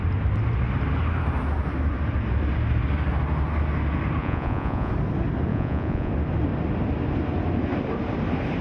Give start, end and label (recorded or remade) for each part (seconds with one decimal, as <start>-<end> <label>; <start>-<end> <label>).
0.0-4.2 recorded; 4.2-4.9 remade; 4.9-5.5 recorded; 5.5-6.1 remade; 6.1-8.6 recorded